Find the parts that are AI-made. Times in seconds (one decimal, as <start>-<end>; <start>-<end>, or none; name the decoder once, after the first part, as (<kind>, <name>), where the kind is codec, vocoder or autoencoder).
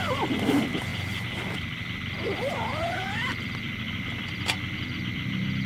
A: 0.0-5.7 (vocoder, BigVGAN v2)